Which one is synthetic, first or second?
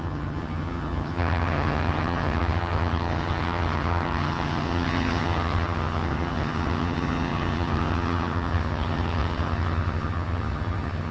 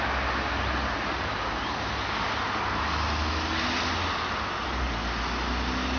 first